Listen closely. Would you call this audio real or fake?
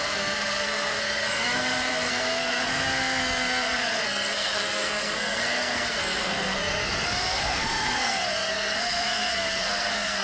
fake